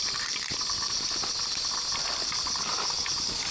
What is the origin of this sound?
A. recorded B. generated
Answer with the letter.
A